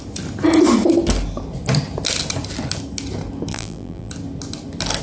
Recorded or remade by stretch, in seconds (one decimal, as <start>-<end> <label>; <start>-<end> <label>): 0.0-3.5 recorded; 3.5-4.1 remade; 4.1-5.0 recorded

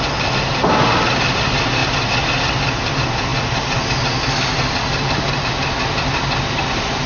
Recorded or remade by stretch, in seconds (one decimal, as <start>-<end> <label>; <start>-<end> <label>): 0.0-7.1 recorded

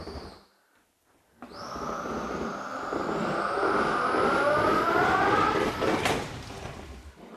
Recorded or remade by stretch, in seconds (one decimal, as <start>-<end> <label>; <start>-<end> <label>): 0.0-2.7 recorded; 2.7-3.6 remade; 3.6-4.7 recorded; 4.7-5.8 remade; 5.8-7.4 recorded